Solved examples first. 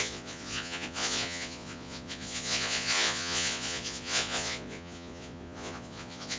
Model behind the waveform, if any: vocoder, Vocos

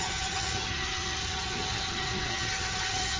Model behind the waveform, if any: vocoder, HiFi-GAN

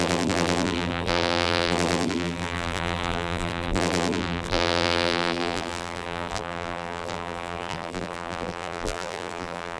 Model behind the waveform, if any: vocoder, BigVGAN v2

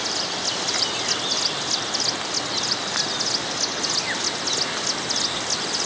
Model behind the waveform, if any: none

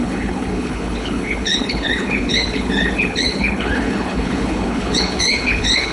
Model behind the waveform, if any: codec, HILCodec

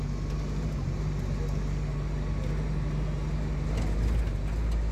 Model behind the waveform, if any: none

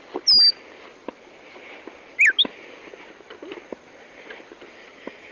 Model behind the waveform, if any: none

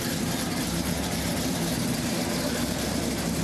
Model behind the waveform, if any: vocoder, BigVGAN v2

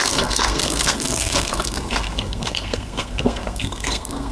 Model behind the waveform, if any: codec, SNAC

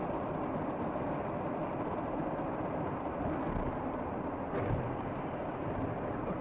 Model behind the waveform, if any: none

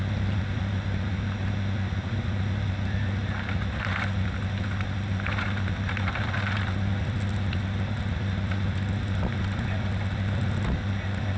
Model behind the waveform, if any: none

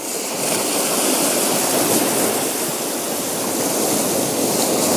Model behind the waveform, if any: none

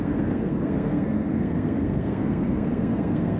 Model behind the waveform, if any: codec, SNAC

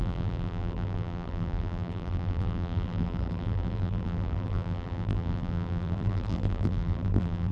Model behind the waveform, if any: vocoder, BigVGAN v2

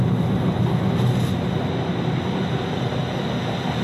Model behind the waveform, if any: none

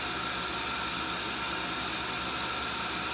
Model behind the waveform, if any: none